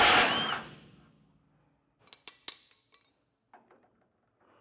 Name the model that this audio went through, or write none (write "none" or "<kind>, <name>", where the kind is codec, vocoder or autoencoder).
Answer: none